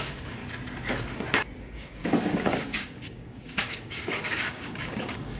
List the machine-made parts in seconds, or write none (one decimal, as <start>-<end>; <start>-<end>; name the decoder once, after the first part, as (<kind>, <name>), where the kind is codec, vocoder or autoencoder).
0.0-0.4 (codec, DAC); 1.6-5.4